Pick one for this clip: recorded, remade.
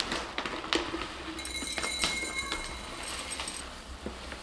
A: recorded